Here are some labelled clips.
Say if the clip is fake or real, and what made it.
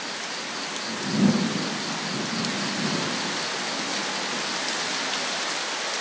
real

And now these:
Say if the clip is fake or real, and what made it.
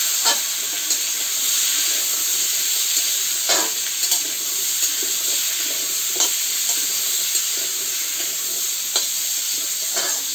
real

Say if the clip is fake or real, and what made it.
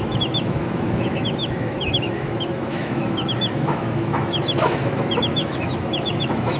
fake, autoencoder, DAC-VAE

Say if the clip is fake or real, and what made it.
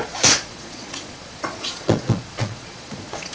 fake, vocoder, Vocos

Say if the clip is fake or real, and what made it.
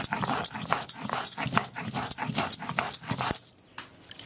real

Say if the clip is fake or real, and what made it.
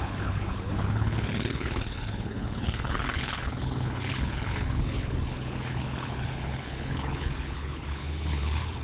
fake, codec, HILCodec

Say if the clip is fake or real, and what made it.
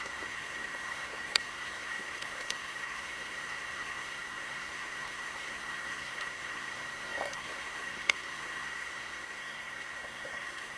fake, codec, SNAC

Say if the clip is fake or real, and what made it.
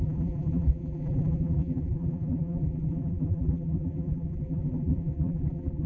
fake, vocoder, BigVGAN v2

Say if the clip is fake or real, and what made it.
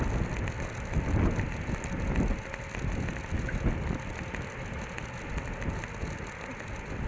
real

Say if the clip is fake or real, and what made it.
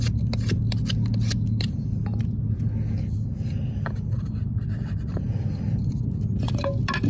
real